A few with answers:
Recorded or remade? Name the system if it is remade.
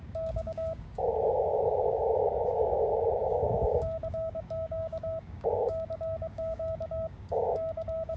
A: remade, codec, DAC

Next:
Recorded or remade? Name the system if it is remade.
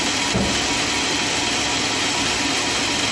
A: recorded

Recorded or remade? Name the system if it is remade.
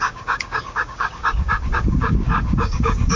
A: remade, codec, DAC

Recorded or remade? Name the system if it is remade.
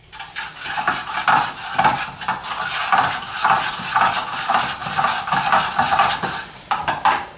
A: recorded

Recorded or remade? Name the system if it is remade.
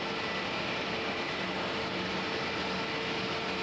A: recorded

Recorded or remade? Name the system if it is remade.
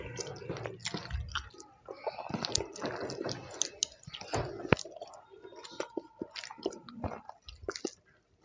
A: recorded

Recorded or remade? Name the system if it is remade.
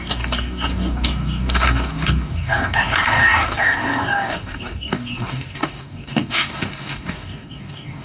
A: remade, codec, DAC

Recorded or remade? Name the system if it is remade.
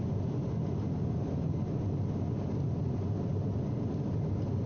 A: recorded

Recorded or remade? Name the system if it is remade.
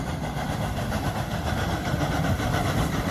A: recorded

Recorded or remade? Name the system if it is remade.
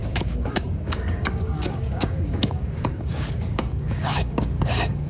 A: remade, codec, DAC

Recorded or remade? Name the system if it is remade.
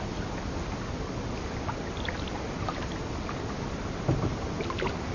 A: recorded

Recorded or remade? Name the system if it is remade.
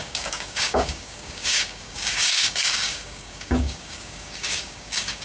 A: remade, codec, DAC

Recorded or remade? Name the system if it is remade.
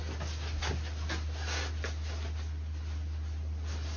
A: recorded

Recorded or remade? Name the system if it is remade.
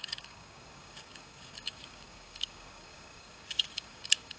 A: remade, codec, DAC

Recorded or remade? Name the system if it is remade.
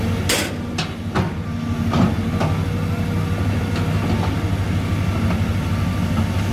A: recorded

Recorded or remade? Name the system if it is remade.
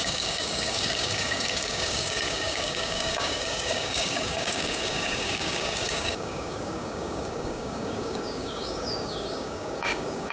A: remade, codec, DAC